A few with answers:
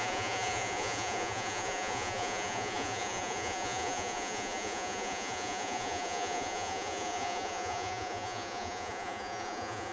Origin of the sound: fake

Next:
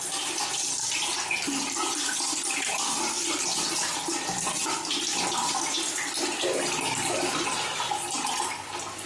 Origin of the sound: real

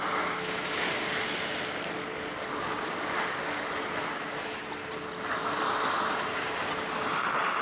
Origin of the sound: real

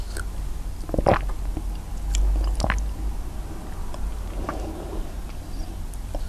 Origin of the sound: real